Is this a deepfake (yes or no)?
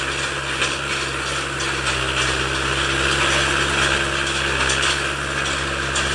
no